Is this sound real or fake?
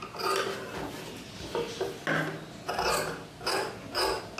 real